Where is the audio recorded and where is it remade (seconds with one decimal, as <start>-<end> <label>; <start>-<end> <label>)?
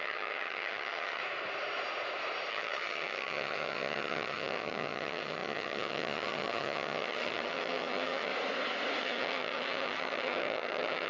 0.0-1.2 remade; 1.2-2.5 recorded; 2.5-8.3 remade; 8.3-9.0 recorded; 9.0-11.1 remade